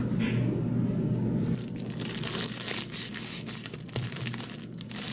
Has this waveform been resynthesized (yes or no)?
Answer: no